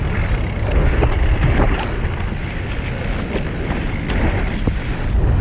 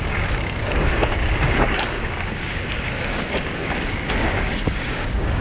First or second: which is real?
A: first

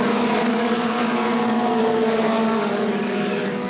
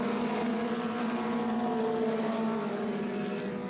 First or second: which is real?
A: second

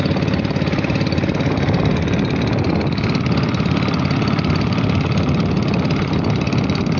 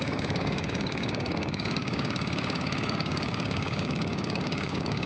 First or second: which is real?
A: first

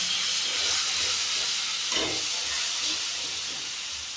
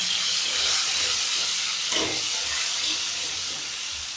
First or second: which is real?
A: first